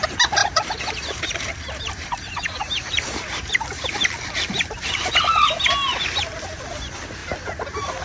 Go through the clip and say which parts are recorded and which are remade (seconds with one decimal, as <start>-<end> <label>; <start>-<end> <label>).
0.0-0.4 recorded; 0.4-5.2 remade; 5.2-8.0 recorded